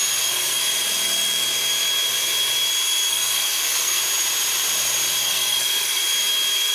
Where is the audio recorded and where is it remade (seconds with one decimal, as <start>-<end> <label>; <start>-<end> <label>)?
0.0-0.6 remade; 0.6-3.1 recorded; 3.1-4.0 remade; 4.0-5.2 recorded; 5.2-6.0 remade; 6.0-6.7 recorded